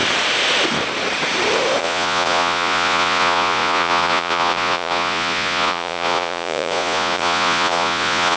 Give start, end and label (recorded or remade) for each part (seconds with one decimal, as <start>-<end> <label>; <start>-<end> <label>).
0.0-1.8 recorded; 1.8-8.4 remade